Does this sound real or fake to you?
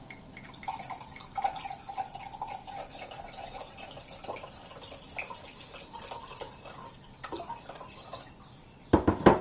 real